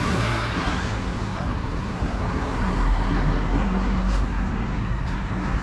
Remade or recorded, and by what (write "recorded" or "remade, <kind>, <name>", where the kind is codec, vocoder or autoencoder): remade, codec, SNAC